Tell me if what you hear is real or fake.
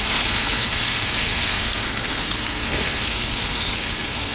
fake